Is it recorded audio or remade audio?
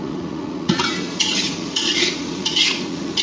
remade